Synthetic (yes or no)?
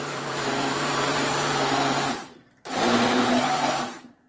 yes